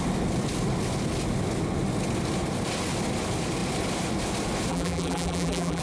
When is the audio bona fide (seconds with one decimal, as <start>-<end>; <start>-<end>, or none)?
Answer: 0.0-4.7